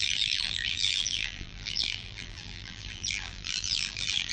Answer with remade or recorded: remade